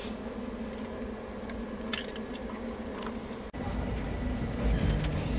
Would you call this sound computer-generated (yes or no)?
no